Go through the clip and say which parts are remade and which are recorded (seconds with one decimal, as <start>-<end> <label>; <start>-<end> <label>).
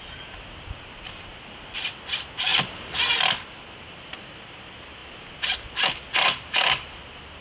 0.0-7.4 recorded